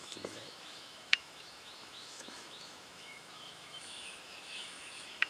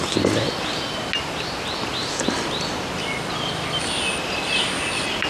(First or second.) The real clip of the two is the second